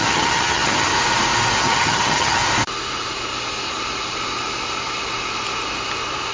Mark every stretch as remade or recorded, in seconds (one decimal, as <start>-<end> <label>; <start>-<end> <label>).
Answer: 0.0-0.9 remade; 0.9-1.6 recorded; 1.6-2.4 remade; 2.4-6.3 recorded